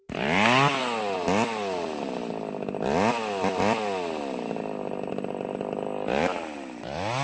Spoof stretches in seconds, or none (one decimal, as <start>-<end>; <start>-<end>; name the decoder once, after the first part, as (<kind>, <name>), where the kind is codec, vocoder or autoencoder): none